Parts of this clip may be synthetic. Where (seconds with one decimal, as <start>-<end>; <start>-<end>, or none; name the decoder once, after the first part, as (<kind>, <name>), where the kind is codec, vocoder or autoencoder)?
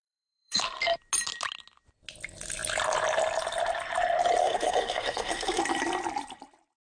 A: 0.0-0.6 (codec, SNAC); 4.4-5.6